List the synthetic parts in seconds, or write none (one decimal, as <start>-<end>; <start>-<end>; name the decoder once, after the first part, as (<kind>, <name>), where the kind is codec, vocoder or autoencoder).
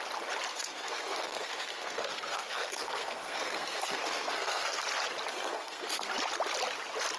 0.5-4.8 (codec, SNAC); 5.3-6.1